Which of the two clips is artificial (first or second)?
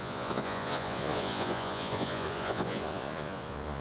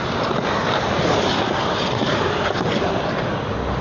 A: first